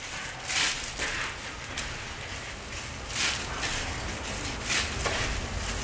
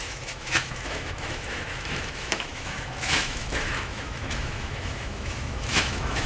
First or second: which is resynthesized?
second